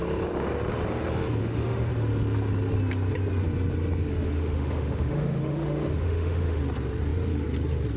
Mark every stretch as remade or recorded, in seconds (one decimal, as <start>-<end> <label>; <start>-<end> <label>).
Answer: 0.0-1.4 recorded; 1.4-1.9 remade; 1.9-4.1 recorded; 4.1-6.6 remade; 6.6-8.0 recorded